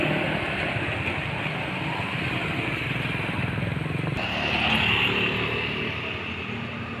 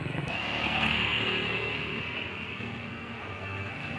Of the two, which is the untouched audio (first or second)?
first